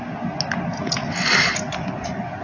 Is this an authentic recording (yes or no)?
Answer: yes